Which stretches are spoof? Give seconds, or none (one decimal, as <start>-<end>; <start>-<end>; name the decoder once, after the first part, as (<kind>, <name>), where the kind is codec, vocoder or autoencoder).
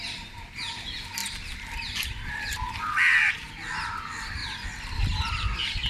1.2-3.3 (vocoder, BigVGAN v2); 4.4-5.3